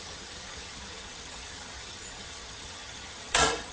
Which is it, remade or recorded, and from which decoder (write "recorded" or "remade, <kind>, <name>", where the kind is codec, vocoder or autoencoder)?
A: remade, vocoder, HiFi-GAN